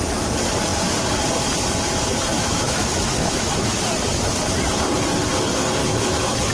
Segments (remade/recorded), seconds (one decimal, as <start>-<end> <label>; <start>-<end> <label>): 0.0-2.3 recorded; 2.3-3.8 remade; 3.8-5.8 recorded; 5.8-6.5 remade